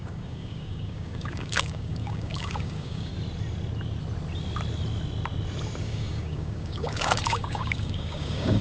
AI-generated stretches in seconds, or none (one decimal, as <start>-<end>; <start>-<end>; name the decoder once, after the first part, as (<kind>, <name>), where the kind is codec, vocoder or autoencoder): 0.0-3.1 (codec, DAC); 5.8-8.6